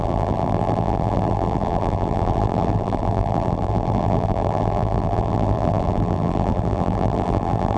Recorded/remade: remade